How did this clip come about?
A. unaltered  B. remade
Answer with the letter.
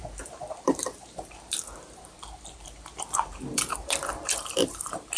B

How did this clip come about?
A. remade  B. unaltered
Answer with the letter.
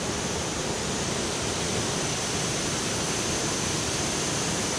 B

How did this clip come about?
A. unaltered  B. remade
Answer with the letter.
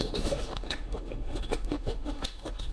B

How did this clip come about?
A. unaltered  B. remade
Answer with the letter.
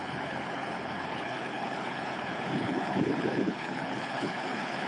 B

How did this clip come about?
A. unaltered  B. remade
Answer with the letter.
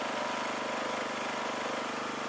A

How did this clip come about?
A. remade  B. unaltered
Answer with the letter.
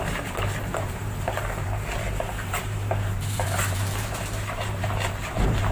A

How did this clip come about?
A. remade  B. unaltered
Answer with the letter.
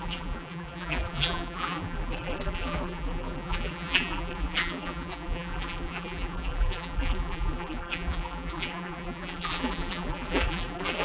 A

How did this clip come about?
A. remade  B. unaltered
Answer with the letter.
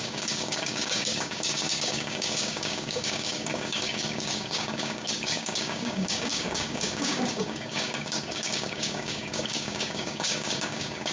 A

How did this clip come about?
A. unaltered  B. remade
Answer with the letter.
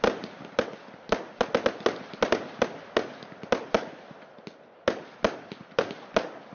A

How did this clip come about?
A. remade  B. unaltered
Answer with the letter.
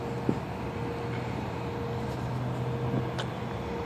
B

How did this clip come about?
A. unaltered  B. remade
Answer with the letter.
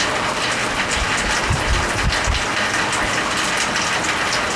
A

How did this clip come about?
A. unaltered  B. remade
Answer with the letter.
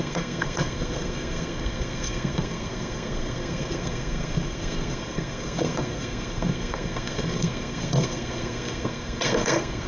B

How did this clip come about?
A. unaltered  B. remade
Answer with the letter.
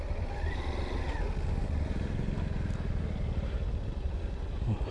A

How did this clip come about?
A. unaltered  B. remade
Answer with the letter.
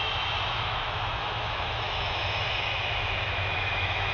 B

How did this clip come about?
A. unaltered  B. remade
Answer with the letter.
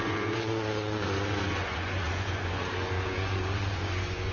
B